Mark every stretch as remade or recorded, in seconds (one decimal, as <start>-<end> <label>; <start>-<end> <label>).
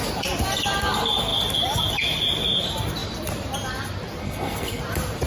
0.0-4.2 recorded; 4.2-4.8 remade; 4.8-5.3 recorded